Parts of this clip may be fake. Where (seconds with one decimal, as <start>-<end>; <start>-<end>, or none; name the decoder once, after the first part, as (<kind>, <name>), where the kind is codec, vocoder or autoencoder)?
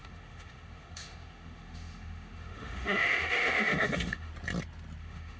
0.0-4.3 (autoencoder, DAC-VAE); 5.0-5.4